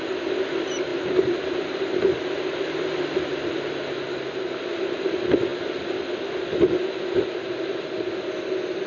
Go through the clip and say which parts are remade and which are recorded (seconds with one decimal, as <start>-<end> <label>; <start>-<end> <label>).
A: 0.0-0.9 recorded; 0.9-3.9 remade; 3.9-8.9 recorded